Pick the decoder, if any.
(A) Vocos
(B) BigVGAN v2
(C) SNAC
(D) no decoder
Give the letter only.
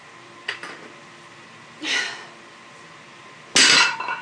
D